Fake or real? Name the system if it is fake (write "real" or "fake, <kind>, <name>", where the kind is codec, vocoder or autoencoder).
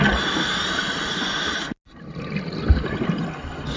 real